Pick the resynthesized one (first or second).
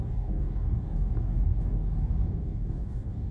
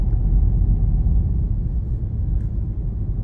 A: first